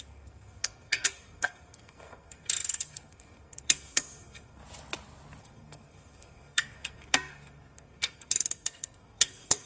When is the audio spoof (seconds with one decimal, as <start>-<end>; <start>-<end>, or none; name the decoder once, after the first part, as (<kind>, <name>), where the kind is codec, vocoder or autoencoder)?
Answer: 0.0-4.6 (codec, SNAC); 5.4-9.7